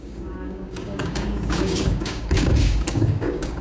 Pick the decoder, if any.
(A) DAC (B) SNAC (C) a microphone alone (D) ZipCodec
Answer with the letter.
A